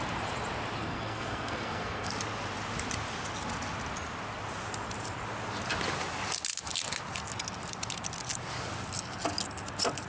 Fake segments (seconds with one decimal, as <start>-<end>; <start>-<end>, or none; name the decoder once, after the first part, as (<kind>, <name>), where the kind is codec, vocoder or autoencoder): 0.8-2.1 (codec, SNAC)

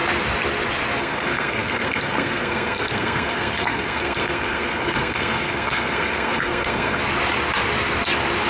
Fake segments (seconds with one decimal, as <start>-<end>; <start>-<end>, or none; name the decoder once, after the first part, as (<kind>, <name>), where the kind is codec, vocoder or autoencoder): 1.0-7.0 (codec, SNAC)

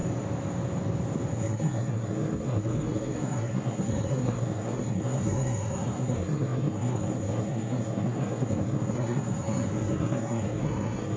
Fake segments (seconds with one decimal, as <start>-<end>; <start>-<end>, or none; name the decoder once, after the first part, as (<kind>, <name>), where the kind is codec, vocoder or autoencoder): 1.4-11.2 (codec, SNAC)

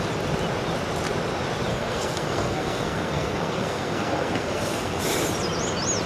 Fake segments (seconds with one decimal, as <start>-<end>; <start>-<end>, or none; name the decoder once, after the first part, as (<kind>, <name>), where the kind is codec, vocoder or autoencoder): 1.7-5.0 (codec, SNAC)